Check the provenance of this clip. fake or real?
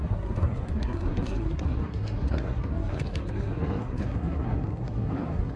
fake